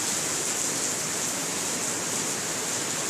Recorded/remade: recorded